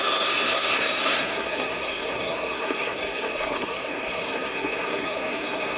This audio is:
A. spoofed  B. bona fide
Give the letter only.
A